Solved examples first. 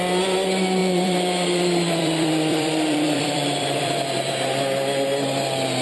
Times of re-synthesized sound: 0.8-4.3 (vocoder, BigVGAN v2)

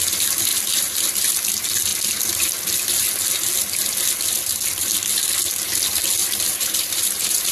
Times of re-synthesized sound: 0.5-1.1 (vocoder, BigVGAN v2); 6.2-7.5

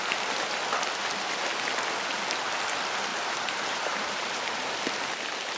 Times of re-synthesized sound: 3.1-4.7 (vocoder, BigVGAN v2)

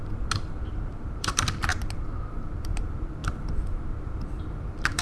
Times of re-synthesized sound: 0.9-1.7 (vocoder, BigVGAN v2); 2.3-5.0

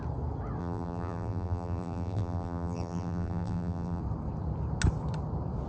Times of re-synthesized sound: 0.6-4.0 (vocoder, BigVGAN v2)

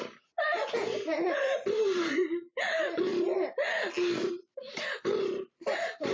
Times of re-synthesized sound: 0.0-3.1 (vocoder, BigVGAN v2); 4.3-6.1

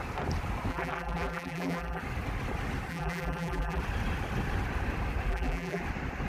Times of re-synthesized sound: 0.7-2.0 (vocoder, BigVGAN v2); 2.9-3.8; 5.3-5.8